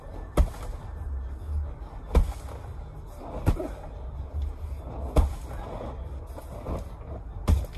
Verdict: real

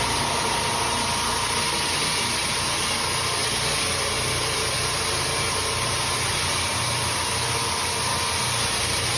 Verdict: real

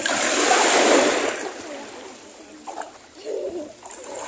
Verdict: real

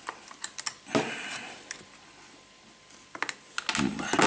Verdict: real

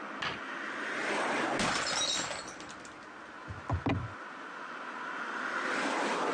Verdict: real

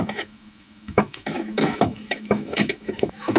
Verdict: fake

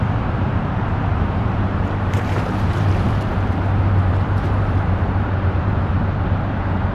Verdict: fake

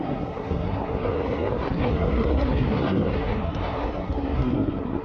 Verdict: fake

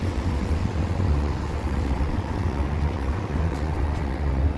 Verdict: fake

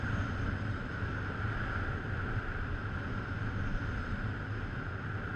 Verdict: real